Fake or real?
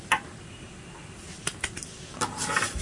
real